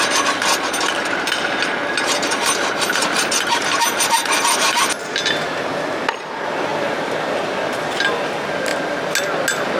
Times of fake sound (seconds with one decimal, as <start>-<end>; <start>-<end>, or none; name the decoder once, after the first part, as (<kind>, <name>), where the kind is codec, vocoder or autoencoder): 2.2-4.9 (vocoder, BigVGAN v2)